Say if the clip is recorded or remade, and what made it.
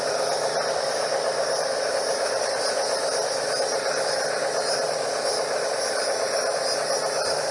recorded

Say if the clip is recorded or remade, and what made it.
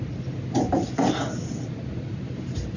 recorded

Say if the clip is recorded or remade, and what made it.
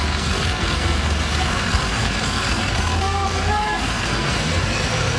remade, codec, SNAC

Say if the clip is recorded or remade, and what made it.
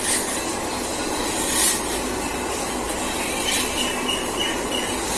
recorded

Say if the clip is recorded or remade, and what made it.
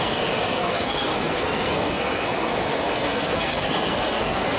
remade, codec, SNAC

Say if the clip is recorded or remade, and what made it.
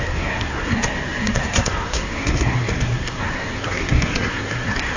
remade, codec, SNAC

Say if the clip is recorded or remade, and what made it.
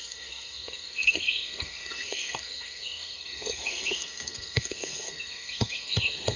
remade, codec, SNAC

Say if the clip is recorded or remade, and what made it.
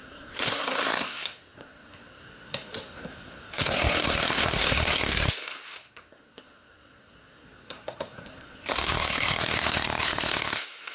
remade, codec, SNAC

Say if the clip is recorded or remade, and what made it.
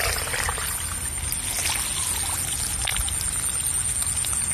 recorded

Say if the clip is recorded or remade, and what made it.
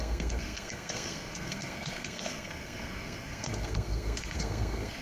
remade, codec, SNAC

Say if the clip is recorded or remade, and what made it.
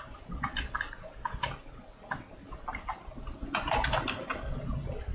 recorded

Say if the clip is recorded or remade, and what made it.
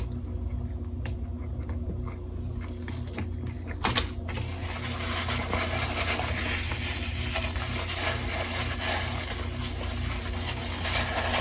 recorded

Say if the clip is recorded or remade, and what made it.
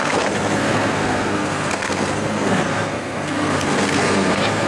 remade, codec, SNAC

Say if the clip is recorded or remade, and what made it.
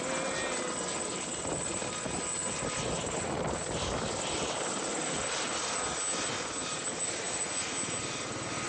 recorded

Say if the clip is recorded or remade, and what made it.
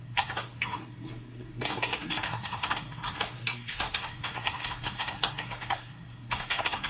remade, codec, SNAC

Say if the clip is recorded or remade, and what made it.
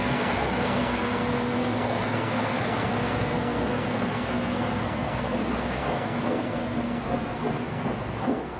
remade, codec, SNAC